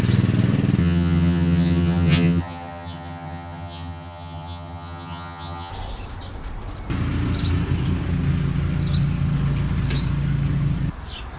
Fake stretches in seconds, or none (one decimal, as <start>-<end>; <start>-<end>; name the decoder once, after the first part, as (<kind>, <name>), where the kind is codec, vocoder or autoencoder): 0.8-5.7 (vocoder, HiFi-GAN)